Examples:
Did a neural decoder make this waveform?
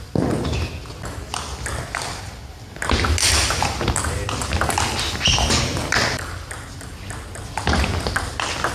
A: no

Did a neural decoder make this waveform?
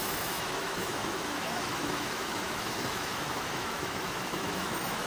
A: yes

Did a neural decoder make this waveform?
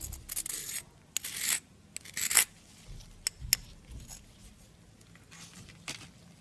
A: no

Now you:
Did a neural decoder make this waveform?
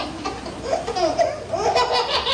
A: no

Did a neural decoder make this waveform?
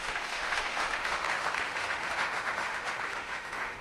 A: yes